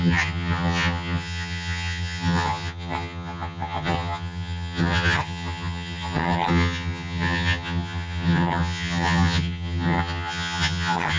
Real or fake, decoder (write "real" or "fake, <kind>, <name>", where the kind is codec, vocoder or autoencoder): fake, vocoder, HiFi-GAN